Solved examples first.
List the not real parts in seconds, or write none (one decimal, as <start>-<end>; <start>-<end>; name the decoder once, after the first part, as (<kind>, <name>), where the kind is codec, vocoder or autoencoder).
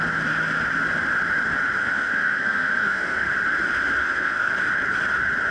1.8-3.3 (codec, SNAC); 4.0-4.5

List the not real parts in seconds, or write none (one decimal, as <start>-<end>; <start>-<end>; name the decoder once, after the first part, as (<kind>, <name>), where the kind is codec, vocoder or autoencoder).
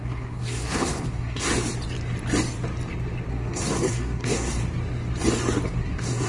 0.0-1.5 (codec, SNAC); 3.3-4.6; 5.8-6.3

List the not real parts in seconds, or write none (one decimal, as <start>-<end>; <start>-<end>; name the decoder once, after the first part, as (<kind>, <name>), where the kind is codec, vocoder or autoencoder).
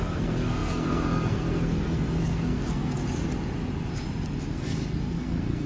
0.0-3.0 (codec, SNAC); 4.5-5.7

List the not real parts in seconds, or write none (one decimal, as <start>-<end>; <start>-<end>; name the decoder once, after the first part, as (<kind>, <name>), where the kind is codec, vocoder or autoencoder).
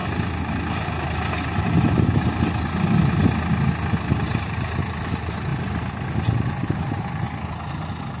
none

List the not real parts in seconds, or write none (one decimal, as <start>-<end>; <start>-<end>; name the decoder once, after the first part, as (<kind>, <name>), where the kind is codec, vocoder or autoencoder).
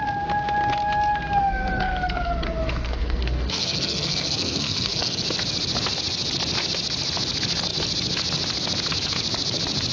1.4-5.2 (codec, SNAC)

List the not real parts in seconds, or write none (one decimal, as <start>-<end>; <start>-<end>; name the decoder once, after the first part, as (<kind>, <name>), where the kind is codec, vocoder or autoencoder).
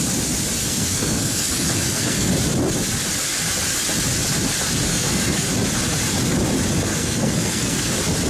0.6-2.3 (codec, SNAC); 4.9-5.5; 6.9-7.9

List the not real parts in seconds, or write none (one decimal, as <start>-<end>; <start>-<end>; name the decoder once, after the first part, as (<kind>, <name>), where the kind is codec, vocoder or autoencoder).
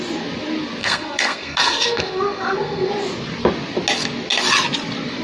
0.8-2.9 (codec, SNAC)